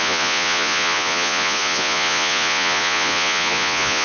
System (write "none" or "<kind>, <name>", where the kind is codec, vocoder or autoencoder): vocoder, Vocos